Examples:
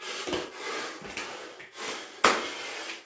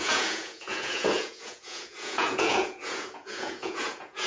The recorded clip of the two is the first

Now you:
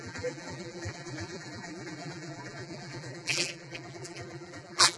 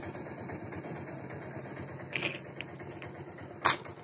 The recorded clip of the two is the second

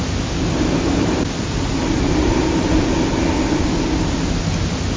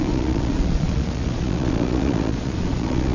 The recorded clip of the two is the first